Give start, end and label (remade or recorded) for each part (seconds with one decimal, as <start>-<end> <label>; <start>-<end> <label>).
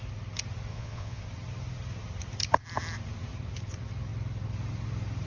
0.0-0.7 recorded; 0.7-1.2 remade; 1.2-5.3 recorded